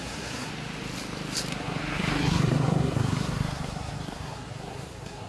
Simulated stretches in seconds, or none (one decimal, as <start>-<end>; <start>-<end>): 0.0-0.5; 1.6-5.3